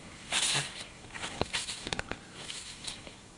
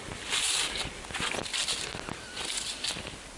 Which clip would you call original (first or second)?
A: second